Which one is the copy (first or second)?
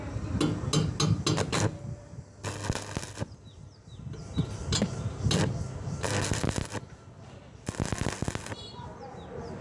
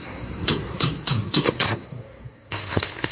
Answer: second